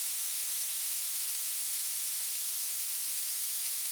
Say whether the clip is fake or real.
fake